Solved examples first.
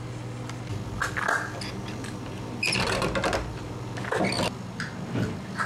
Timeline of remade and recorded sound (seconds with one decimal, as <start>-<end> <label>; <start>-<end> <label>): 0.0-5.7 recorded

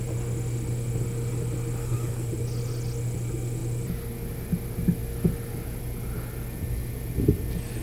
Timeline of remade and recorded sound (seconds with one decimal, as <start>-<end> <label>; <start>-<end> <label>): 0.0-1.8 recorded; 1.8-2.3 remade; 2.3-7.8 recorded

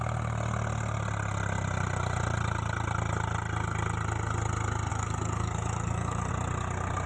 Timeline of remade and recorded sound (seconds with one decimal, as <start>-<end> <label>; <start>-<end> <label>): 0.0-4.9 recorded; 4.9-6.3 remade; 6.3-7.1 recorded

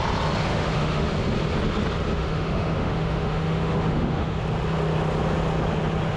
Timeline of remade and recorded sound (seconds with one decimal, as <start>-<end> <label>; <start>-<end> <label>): 0.0-0.5 recorded; 0.5-1.1 remade; 1.1-2.1 recorded; 2.1-4.4 remade; 4.4-6.2 recorded

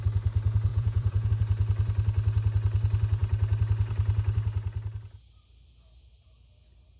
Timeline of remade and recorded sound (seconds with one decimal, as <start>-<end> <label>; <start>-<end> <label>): 0.0-0.7 recorded; 0.7-1.3 remade; 1.3-7.0 recorded

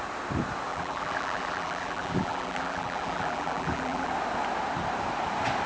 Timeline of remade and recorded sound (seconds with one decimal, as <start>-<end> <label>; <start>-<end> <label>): 0.0-0.7 recorded; 0.7-4.1 remade; 4.1-5.7 recorded

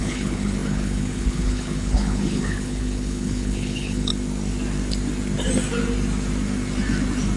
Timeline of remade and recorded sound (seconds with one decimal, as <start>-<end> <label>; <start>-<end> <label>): 0.0-4.1 remade; 4.1-7.4 recorded

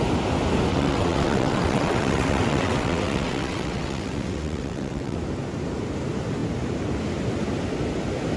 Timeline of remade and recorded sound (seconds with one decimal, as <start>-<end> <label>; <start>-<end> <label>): 0.0-0.7 recorded; 0.7-5.2 remade; 5.2-8.4 recorded